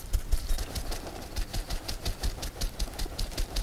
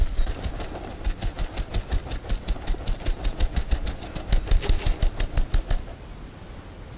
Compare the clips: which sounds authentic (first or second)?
second